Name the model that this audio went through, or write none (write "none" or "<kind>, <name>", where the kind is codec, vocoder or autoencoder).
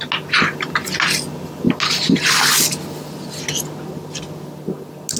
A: none